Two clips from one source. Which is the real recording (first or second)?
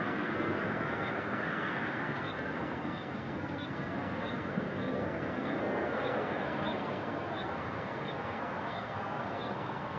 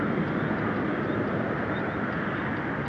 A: second